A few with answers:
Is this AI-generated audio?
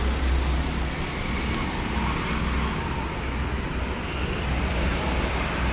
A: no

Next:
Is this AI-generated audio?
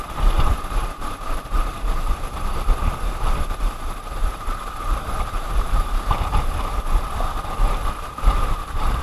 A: yes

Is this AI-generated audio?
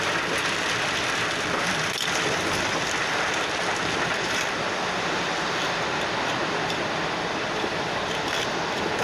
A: yes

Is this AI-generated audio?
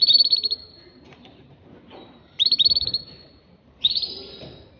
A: yes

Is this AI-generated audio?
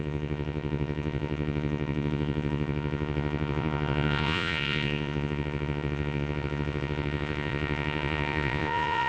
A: yes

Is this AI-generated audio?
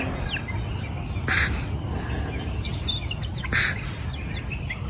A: no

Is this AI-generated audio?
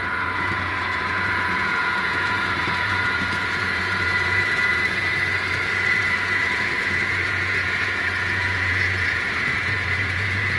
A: yes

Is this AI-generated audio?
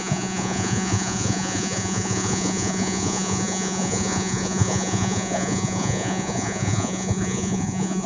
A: yes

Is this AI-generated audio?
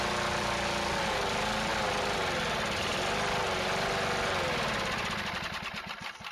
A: no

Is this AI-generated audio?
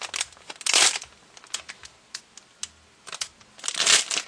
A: no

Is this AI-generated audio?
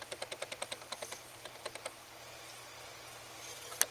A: no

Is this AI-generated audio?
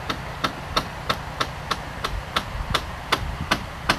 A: yes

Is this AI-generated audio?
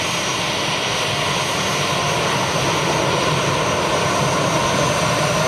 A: no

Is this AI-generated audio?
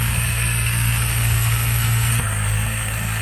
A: yes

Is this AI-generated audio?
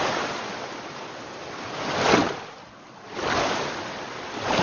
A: no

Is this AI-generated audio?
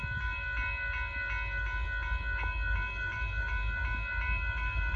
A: no